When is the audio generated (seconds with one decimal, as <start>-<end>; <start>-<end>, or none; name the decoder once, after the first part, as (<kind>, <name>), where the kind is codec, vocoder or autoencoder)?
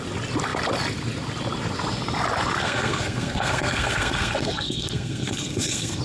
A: 2.6-6.0 (codec, SNAC)